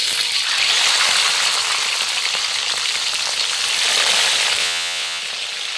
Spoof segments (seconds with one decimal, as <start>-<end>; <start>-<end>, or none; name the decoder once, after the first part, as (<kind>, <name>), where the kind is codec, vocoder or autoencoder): 4.6-5.2 (vocoder, WaveNeXt)